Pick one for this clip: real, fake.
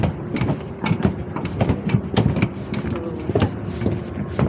real